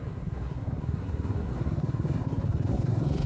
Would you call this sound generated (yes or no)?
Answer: yes